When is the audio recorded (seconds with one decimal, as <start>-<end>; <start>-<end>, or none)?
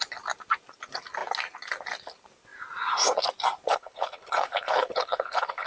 0.0-3.7